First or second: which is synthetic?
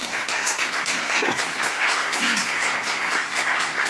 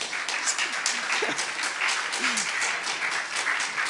first